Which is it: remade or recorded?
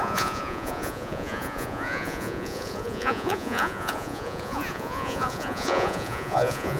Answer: remade